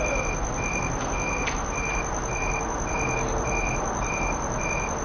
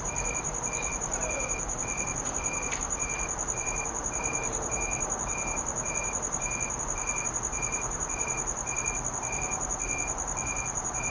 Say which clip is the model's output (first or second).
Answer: second